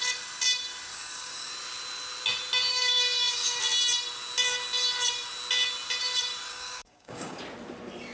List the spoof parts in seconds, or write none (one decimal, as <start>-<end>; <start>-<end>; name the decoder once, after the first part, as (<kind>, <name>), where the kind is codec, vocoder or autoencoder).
0.9-1.5 (codec, DAC); 2.7-3.6; 6.5-7.4

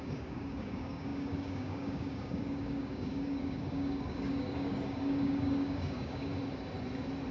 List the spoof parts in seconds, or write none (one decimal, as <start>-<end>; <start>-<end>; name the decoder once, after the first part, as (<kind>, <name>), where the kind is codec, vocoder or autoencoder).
0.0-6.3 (codec, DAC)

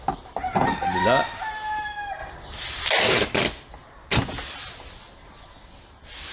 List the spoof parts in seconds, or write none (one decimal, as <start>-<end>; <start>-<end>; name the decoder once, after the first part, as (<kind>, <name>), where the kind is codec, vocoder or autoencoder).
none